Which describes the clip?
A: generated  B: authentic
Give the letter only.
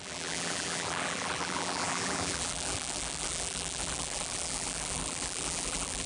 A